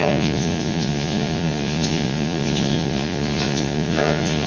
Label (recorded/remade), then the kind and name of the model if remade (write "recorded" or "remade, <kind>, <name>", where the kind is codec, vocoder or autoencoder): remade, vocoder, Vocos